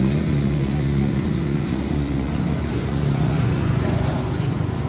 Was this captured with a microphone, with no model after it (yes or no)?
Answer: no